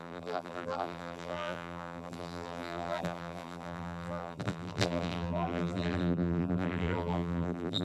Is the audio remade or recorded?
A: remade